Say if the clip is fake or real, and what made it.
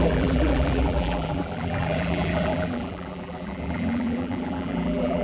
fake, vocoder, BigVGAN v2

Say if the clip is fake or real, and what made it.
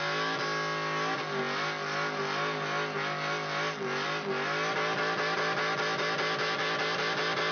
real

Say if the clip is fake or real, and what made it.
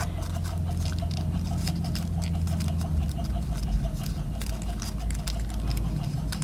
real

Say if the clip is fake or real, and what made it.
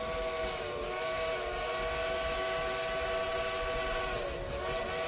real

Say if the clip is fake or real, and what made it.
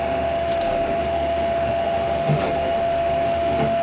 fake, autoencoder, DAC-VAE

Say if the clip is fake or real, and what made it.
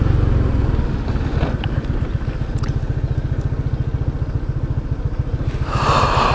real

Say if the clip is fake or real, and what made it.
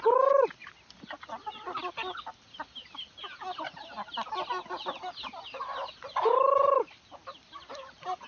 real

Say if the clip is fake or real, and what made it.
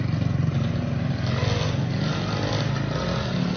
real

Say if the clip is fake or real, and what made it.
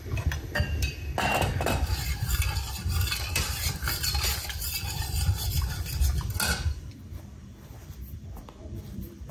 fake, vocoder, BigVGAN v2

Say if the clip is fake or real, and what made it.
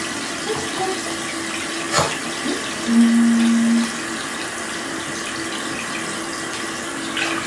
real